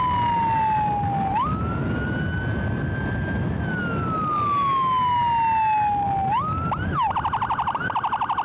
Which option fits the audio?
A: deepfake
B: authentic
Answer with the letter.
B